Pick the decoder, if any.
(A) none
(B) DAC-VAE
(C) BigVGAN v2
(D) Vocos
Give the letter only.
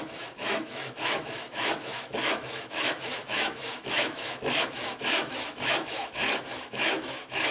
B